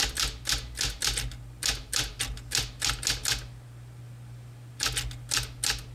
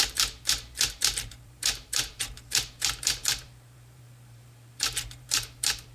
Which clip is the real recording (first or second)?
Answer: first